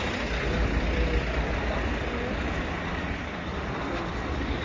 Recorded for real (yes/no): yes